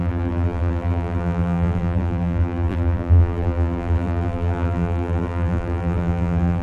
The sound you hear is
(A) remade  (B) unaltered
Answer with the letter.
A